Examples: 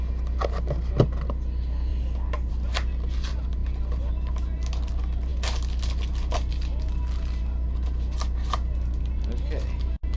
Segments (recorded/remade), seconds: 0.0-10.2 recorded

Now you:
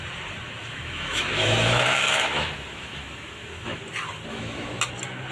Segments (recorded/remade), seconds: 0.0-0.6 recorded; 0.6-3.8 remade; 3.8-4.3 recorded; 4.3-4.8 remade; 4.8-5.3 recorded

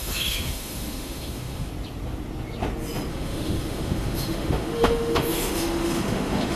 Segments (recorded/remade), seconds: 0.0-1.7 remade; 1.7-3.1 recorded; 3.1-6.6 remade

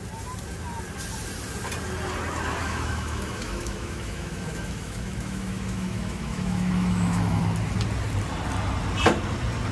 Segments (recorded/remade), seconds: 0.0-2.6 recorded; 2.6-7.4 remade; 7.4-9.7 recorded

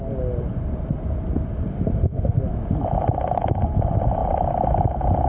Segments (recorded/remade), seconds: 0.0-1.7 recorded; 1.7-2.4 remade; 2.4-5.3 recorded

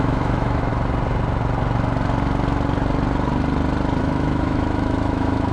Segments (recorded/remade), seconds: 0.0-0.7 remade; 0.7-4.0 recorded; 4.0-5.5 remade

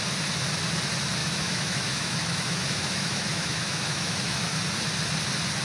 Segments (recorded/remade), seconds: 0.0-1.2 recorded; 1.2-4.6 remade; 4.6-5.6 recorded